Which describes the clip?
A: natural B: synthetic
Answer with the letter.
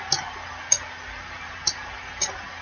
A